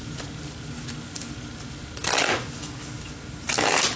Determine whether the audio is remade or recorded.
recorded